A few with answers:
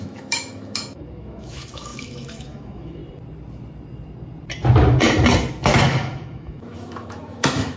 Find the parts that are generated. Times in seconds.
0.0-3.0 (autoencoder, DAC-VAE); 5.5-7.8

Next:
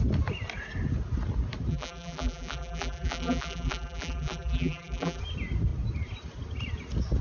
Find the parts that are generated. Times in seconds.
1.7-5.2 (vocoder, BigVGAN v2)

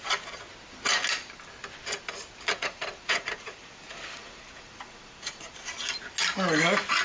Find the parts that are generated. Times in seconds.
2.6-5.5 (vocoder, Vocos)

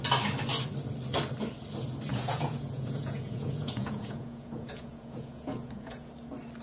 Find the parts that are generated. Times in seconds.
2.1-6.1 (vocoder, Vocos)

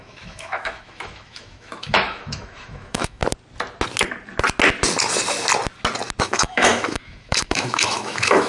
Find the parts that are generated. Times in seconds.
0.0-3.2 (autoencoder, DAC-VAE); 6.2-8.5

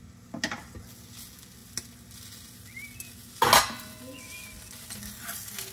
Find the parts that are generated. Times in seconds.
none